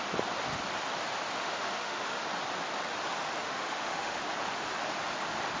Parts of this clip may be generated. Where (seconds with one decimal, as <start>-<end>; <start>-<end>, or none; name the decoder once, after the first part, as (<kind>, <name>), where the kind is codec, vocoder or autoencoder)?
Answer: 1.4-2.3 (autoencoder, DAC-VAE); 3.4-4.2

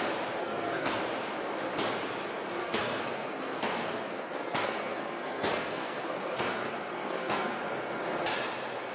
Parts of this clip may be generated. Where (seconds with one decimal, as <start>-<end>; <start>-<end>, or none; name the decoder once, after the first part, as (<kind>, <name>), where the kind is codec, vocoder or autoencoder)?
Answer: 0.4-1.0 (codec, SNAC); 2.6-7.6

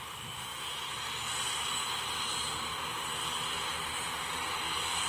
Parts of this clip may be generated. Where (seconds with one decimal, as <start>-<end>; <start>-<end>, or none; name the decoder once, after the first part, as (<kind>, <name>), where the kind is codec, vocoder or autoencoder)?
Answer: none

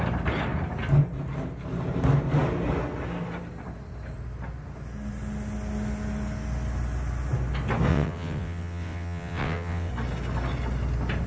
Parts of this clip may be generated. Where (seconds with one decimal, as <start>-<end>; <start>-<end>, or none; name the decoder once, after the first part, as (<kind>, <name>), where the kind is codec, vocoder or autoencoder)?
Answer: 7.9-9.9 (vocoder, WaveNeXt)